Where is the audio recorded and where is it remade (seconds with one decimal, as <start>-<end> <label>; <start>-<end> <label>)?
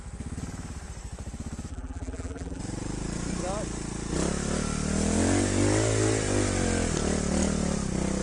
0.0-1.7 recorded; 1.7-2.6 remade; 2.6-8.2 recorded